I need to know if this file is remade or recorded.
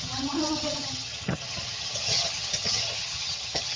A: remade